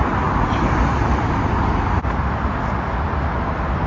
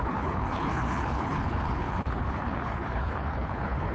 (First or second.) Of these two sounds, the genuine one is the first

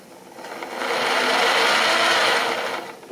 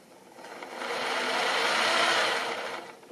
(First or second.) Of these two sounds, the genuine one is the first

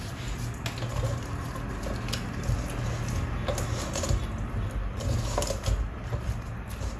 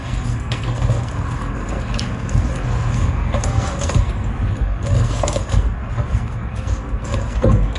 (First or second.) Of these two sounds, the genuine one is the first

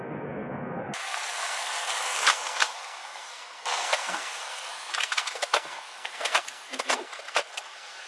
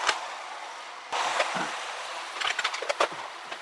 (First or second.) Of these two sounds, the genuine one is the second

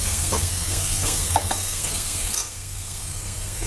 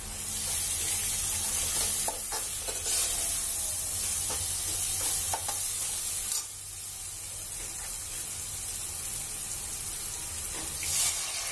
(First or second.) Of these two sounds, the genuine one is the second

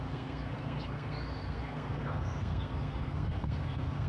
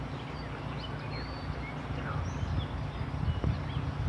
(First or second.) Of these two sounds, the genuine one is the second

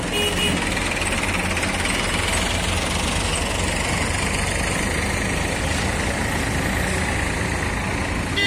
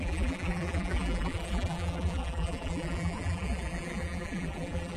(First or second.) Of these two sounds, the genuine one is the first